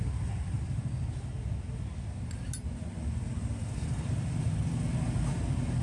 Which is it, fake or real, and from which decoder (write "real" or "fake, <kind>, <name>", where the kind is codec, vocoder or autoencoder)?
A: real